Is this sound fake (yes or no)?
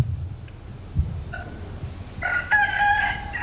yes